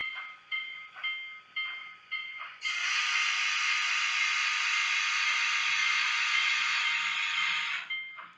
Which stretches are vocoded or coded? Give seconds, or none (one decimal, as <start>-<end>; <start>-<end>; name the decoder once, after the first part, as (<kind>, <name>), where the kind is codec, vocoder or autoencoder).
0.0-1.0 (vocoder, Vocos); 1.8-3.0; 5.8-6.8